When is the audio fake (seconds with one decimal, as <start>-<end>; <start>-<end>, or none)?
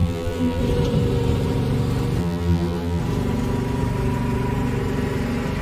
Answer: 0.0-0.6; 2.2-3.0